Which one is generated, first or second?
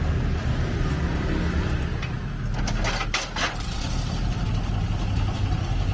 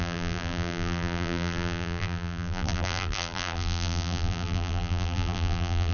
second